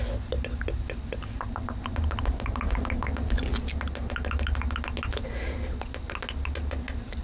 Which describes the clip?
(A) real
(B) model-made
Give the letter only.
A